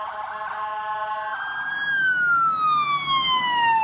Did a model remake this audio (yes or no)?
no